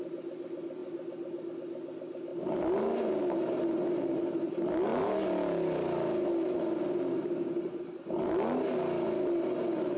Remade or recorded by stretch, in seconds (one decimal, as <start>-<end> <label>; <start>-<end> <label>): 0.0-10.0 recorded